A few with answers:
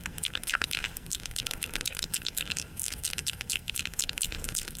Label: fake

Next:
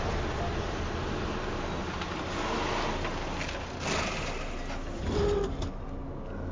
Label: real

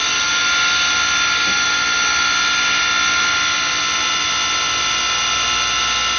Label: real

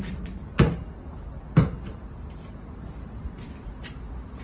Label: real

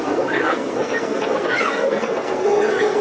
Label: fake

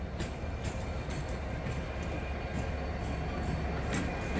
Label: real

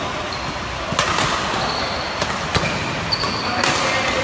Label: real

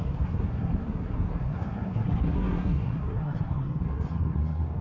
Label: fake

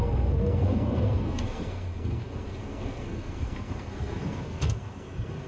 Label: fake